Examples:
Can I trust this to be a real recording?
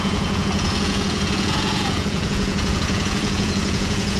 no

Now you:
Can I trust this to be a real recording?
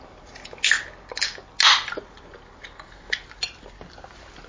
yes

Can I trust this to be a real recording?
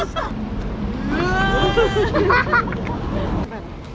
yes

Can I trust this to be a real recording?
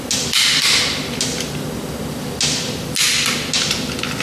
yes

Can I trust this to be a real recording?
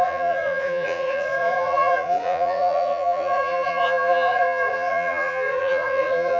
no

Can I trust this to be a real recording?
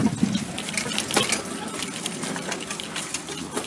yes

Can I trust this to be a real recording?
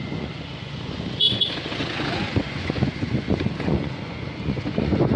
no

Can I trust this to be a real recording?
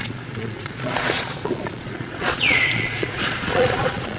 no